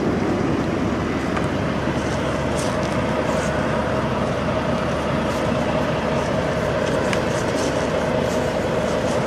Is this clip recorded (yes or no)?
yes